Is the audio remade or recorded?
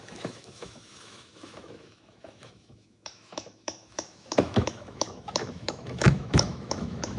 remade